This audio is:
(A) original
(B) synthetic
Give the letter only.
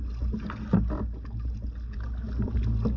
A